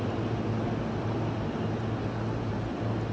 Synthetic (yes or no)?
no